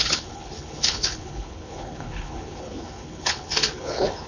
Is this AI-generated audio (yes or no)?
yes